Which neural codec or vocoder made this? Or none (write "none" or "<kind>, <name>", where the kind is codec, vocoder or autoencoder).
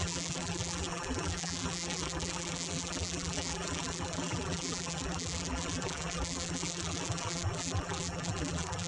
vocoder, BigVGAN v2